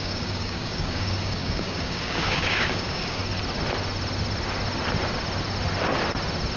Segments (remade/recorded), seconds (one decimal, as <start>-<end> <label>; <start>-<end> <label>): 0.0-3.2 remade; 3.2-6.6 recorded